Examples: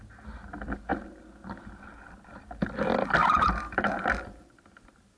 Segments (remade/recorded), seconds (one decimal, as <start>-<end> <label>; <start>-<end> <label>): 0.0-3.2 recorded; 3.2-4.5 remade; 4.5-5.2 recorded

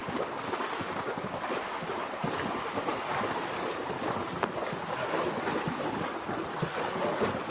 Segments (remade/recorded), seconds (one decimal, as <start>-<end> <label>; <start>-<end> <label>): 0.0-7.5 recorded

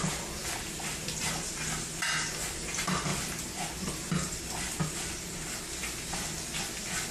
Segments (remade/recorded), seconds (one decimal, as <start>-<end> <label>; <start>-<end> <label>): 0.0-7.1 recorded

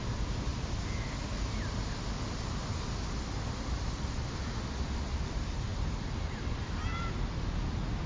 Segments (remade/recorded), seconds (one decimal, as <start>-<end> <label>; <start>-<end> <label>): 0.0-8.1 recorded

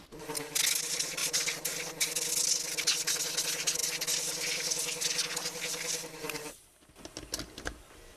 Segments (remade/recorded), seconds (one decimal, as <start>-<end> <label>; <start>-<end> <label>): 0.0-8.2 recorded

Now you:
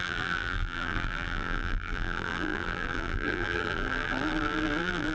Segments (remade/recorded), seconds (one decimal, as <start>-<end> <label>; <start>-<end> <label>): 0.0-5.1 remade

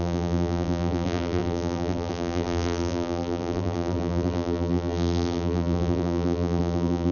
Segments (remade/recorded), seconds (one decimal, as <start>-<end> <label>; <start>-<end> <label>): 0.0-7.1 remade